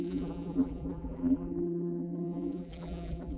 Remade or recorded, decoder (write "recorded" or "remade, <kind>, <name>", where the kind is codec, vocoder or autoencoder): remade, vocoder, BigVGAN v2